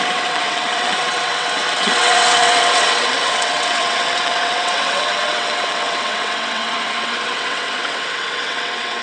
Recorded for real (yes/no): no